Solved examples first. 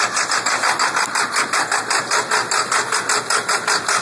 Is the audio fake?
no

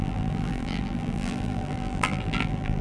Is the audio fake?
yes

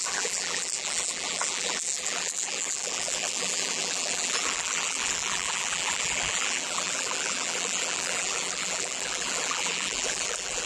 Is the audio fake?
yes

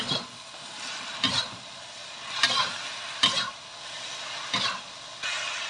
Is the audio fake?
no